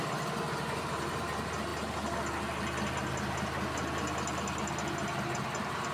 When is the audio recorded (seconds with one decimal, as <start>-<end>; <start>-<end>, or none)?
0.0-5.9